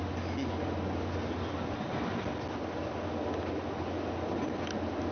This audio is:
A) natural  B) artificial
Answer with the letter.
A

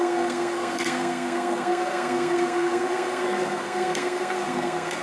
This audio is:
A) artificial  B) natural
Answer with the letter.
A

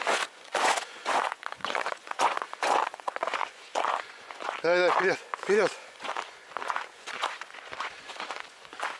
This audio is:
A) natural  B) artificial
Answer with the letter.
B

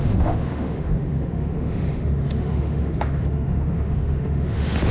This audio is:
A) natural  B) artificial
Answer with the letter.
B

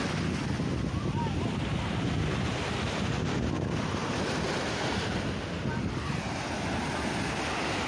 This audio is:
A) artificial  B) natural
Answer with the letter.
B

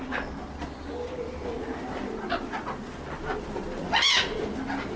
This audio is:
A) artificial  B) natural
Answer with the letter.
B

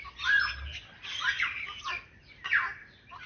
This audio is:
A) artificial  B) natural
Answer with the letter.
B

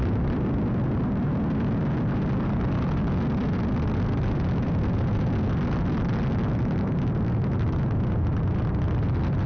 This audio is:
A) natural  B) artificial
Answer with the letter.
A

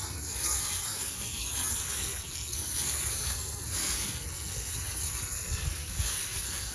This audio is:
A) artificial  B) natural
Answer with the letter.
A